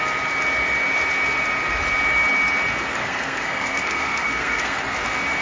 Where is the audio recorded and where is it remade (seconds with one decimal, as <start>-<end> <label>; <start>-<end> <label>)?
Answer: 0.0-3.0 recorded; 3.0-4.8 remade; 4.8-5.4 recorded